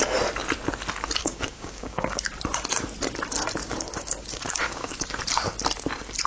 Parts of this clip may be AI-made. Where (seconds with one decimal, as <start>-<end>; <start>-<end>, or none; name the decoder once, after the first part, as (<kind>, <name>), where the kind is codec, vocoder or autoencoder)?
1.2-2.3 (codec, DAC); 3.6-5.2